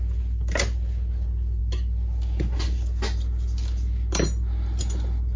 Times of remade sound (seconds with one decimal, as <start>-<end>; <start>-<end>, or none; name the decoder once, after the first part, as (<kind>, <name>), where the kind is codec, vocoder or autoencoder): none